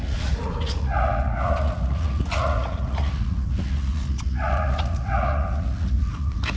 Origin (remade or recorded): remade